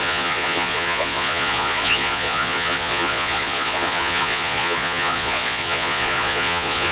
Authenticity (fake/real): fake